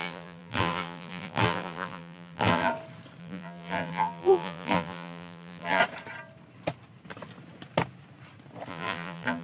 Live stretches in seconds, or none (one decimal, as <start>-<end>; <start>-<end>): 2.7-3.2; 5.8-8.7